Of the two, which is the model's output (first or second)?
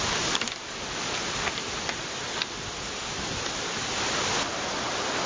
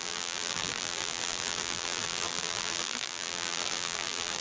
second